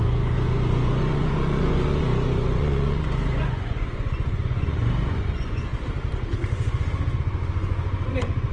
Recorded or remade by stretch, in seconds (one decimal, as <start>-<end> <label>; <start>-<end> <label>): 0.0-5.7 remade; 5.7-7.2 recorded; 7.2-8.5 remade